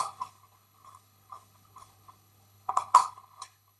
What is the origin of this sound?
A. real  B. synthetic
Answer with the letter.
B